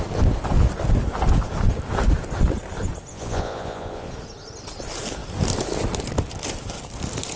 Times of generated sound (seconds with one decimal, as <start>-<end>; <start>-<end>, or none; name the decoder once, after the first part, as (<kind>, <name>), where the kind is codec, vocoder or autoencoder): 3.1-4.1 (vocoder, Vocos)